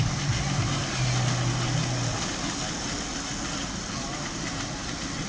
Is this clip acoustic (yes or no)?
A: yes